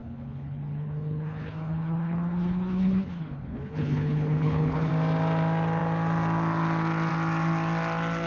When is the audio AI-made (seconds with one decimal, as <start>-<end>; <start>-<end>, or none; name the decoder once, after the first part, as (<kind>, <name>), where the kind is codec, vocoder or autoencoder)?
0.0-4.9 (codec, HILCodec)